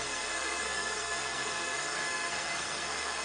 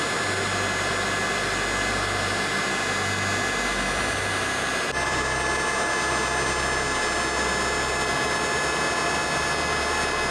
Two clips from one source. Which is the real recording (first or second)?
second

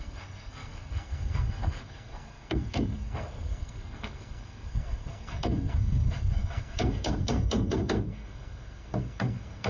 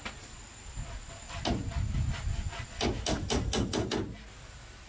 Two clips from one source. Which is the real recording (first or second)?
second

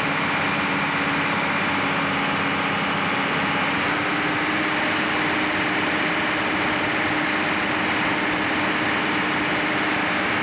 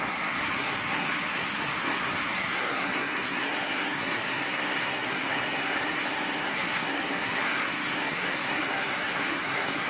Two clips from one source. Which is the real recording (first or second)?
first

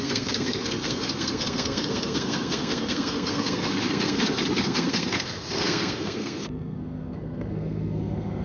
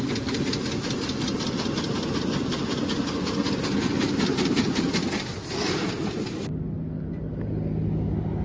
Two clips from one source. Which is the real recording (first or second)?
second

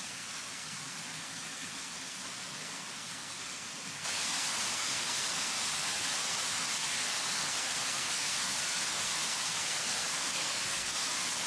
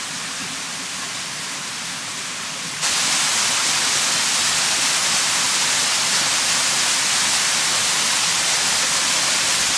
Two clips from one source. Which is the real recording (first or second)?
second